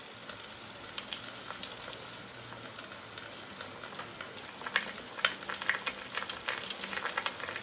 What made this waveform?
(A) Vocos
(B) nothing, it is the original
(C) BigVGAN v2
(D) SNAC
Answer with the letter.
B